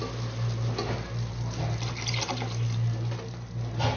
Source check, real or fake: real